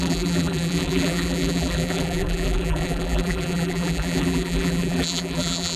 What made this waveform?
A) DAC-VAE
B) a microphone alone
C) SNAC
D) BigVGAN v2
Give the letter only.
D